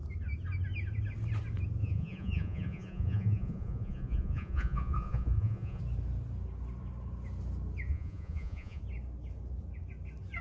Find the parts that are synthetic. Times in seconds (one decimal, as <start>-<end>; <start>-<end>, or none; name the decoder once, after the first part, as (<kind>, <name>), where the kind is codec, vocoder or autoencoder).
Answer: 1.8-5.8 (vocoder, Vocos); 7.9-8.8